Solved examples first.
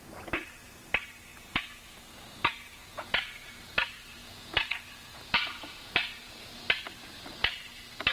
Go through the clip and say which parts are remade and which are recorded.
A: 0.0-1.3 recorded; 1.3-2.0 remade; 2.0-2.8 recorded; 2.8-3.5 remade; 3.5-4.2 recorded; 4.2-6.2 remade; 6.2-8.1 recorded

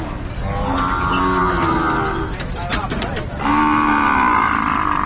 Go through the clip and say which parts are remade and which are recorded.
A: 0.0-5.1 recorded

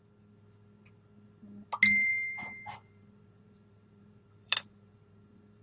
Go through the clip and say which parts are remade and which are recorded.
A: 0.0-2.1 recorded; 2.1-5.6 remade

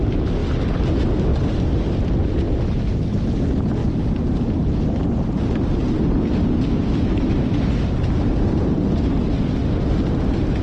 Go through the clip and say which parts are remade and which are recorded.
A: 0.0-0.4 recorded; 0.4-0.9 remade; 0.9-1.3 recorded; 1.3-2.8 remade; 2.8-3.8 recorded; 3.8-4.7 remade; 4.7-5.8 recorded; 5.8-9.6 remade; 9.6-10.6 recorded

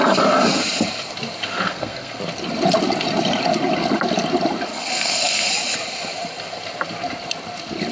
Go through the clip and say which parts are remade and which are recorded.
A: 0.0-1.5 recorded; 1.5-2.2 remade; 2.2-4.7 recorded; 4.7-5.5 remade; 5.5-7.9 recorded

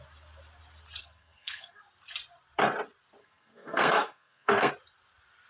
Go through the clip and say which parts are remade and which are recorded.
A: 0.0-1.0 recorded; 1.0-1.8 remade; 1.8-3.2 recorded; 3.2-4.7 remade; 4.7-5.5 recorded

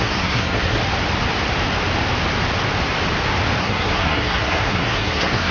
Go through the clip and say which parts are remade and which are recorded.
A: 0.0-0.8 remade; 0.8-3.6 recorded; 3.6-5.5 remade